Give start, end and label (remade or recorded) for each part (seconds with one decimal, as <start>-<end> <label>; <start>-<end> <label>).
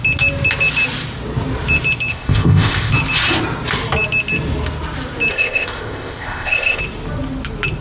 0.0-2.1 recorded; 2.1-2.9 remade; 2.9-5.3 recorded; 5.3-6.8 remade; 6.8-7.8 recorded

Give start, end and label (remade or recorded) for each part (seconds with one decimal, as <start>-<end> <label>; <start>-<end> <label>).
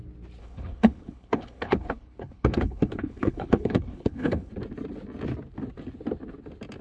0.0-0.4 recorded; 0.4-4.5 remade; 4.5-6.8 recorded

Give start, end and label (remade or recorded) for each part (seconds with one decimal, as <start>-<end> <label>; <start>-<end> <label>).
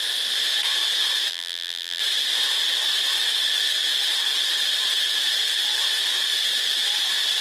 0.0-1.3 recorded; 1.3-2.0 remade; 2.0-7.4 recorded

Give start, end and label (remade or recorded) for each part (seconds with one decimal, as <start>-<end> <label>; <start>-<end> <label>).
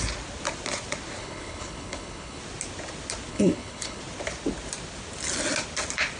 0.0-1.2 recorded; 1.2-2.4 remade; 2.4-3.3 recorded; 3.3-4.0 remade; 4.0-6.2 recorded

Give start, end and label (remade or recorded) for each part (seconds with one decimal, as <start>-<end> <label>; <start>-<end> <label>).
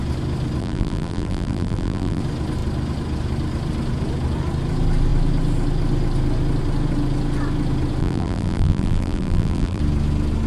0.0-0.6 recorded; 0.6-2.2 remade; 2.2-8.0 recorded; 8.0-9.8 remade; 9.8-10.5 recorded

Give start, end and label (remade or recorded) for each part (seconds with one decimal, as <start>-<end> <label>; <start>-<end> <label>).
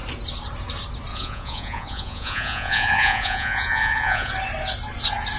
0.0-1.1 recorded; 1.1-4.3 remade; 4.3-5.4 recorded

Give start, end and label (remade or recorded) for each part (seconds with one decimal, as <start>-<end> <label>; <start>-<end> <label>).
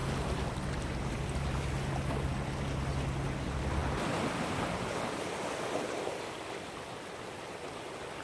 0.0-2.3 remade; 2.3-8.2 recorded